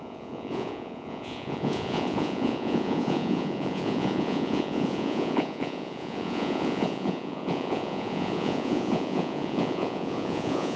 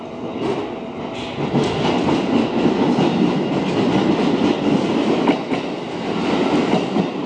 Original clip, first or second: second